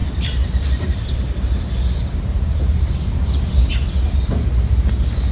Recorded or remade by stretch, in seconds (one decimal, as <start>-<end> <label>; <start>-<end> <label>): 0.0-1.6 remade; 1.6-2.0 recorded; 2.0-3.7 remade; 3.7-5.3 recorded